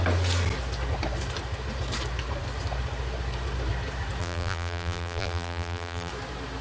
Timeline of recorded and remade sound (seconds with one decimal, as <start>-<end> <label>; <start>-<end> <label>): 0.0-4.2 recorded; 4.2-6.1 remade; 6.1-6.6 recorded